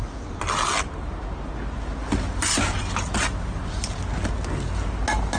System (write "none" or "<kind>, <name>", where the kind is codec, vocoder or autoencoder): none